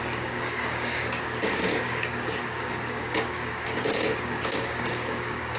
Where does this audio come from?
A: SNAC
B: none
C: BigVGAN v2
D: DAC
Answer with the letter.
D